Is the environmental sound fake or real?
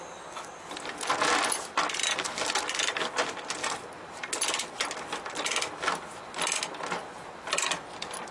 real